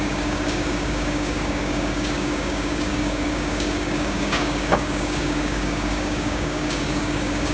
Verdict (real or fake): fake